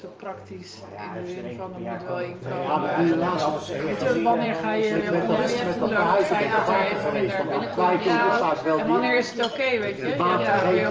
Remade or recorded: remade